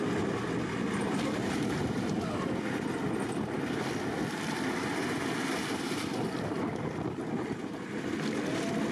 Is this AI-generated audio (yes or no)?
no